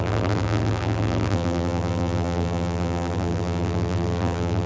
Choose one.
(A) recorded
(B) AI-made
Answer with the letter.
B